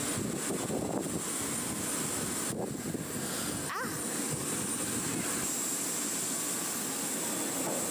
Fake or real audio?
real